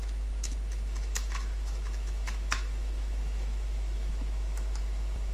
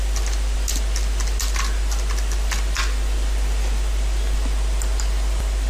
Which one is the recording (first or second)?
second